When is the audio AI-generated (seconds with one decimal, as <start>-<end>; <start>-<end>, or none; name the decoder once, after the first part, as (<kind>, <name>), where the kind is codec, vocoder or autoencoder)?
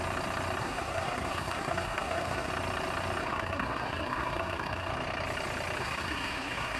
0.6-2.5 (codec, SNAC); 3.2-4.9; 5.8-6.8